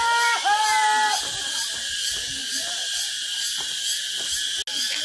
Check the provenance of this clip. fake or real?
real